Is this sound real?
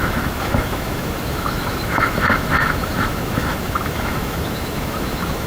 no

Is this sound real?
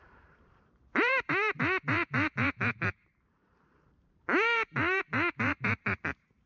no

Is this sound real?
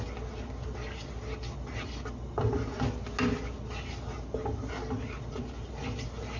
yes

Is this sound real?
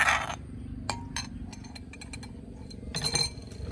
yes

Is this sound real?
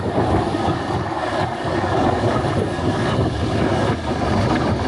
no